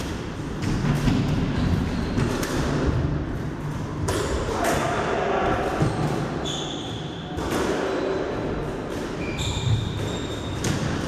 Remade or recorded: recorded